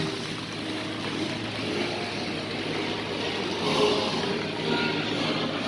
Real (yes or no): yes